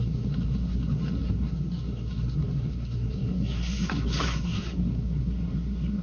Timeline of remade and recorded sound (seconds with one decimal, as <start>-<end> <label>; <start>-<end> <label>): 0.0-6.0 remade